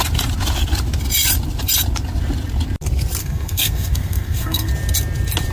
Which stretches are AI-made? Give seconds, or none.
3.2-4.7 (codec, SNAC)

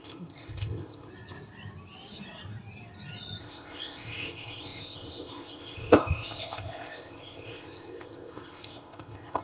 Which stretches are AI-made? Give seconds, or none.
0.0-1.1 (codec, ZipCodec); 3.4-9.4

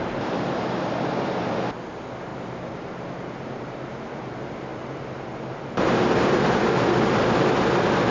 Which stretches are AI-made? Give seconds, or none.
none

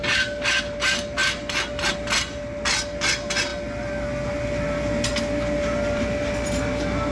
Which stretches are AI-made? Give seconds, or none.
none

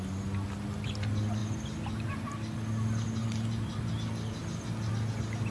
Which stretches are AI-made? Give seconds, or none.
3.2-3.9 (vocoder, BigVGAN v2)

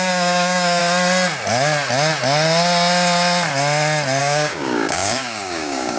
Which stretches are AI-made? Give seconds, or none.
0.0-0.8 (codec, DAC); 4.2-6.0

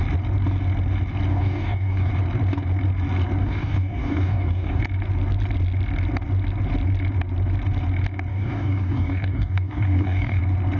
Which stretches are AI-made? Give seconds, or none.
1.3-2.1 (codec, DAC); 3.4-4.8; 8.3-10.4